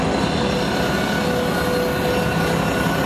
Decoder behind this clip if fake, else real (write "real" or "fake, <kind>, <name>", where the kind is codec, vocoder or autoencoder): real